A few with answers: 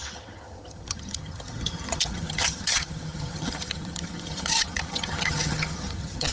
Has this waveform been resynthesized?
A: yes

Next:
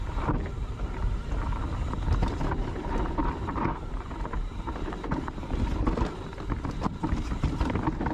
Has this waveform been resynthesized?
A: no